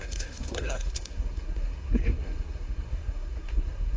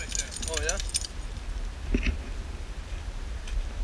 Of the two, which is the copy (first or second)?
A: first